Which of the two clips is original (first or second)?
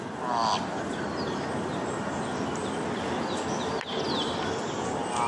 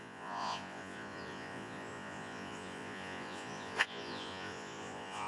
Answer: first